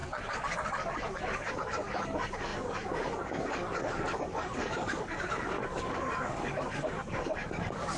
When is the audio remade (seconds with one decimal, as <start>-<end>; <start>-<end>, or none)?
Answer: 0.0-8.0